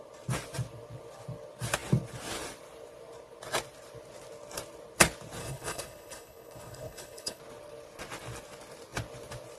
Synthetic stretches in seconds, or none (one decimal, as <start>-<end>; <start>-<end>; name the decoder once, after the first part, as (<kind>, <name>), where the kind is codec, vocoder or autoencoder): 5.4-7.4 (codec, HILCodec)